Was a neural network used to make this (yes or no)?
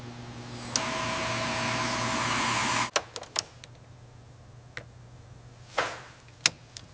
no